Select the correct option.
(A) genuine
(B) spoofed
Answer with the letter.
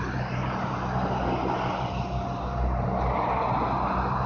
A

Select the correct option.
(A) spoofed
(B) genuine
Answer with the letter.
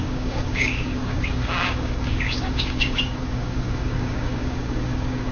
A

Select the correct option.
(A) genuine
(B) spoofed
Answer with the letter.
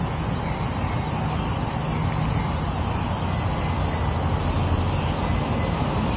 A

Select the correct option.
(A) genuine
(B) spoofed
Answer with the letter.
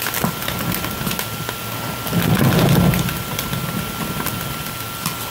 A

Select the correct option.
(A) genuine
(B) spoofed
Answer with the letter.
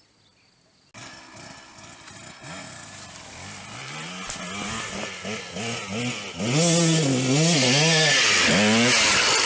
A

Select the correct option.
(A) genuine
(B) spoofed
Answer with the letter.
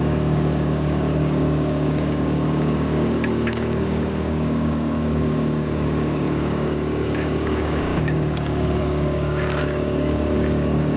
B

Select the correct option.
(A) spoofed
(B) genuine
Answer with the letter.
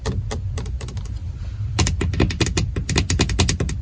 B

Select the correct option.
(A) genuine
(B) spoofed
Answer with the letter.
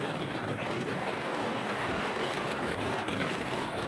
B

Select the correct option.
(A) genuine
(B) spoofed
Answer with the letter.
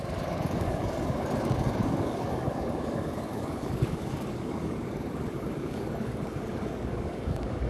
B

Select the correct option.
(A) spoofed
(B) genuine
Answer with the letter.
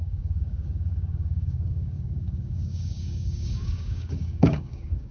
A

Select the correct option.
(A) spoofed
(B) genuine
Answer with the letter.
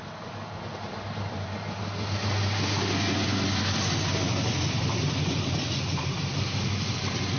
B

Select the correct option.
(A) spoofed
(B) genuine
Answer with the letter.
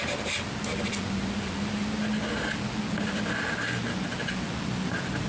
B